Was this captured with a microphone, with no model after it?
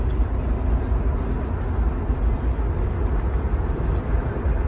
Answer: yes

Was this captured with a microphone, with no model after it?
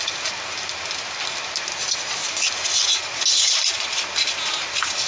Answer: yes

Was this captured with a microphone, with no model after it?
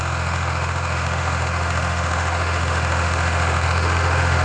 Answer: no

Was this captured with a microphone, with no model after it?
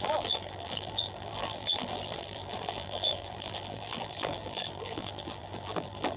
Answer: no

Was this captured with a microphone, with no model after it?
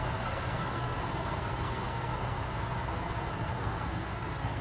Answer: no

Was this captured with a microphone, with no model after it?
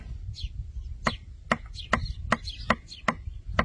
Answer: yes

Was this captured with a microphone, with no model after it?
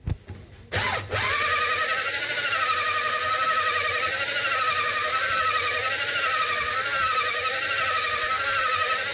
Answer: yes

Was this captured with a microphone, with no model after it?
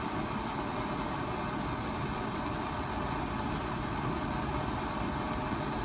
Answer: yes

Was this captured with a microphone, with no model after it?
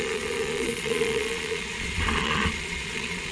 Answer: no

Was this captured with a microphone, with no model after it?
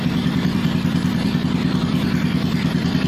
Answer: no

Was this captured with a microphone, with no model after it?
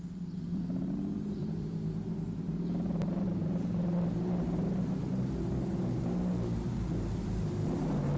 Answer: no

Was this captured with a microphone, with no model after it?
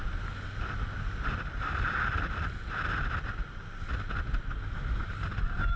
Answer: yes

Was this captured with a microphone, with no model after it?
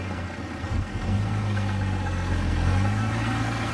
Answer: no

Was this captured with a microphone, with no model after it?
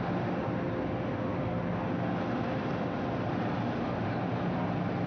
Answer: yes